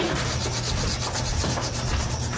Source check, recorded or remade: recorded